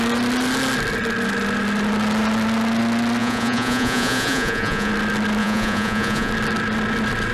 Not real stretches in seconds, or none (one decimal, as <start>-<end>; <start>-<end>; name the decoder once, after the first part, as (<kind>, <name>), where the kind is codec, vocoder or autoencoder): 3.2-4.9 (vocoder, Vocos); 5.4-6.3